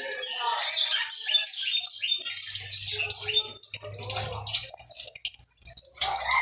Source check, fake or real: real